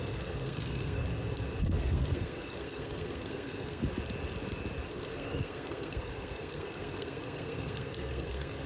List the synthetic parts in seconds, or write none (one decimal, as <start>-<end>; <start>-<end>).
0.0-1.0; 1.6-3.8; 4.9-8.7